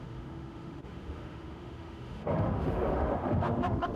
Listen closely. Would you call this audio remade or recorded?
remade